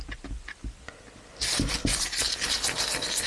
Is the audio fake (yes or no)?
no